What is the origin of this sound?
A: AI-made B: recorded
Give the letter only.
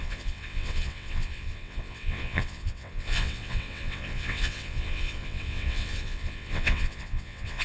A